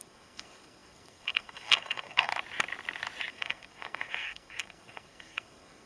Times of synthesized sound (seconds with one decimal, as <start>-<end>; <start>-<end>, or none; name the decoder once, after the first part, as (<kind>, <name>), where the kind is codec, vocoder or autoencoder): 0.0-2.3 (codec, SNAC); 3.3-5.9